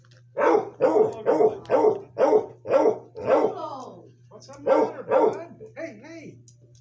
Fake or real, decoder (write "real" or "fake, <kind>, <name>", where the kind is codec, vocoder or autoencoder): real